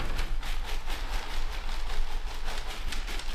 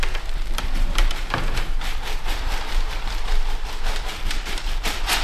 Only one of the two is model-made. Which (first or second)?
second